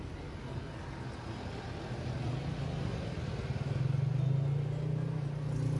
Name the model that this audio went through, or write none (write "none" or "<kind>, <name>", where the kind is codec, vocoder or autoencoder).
none